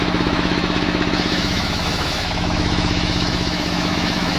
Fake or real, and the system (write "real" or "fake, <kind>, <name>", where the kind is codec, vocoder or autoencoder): fake, autoencoder, DAC-VAE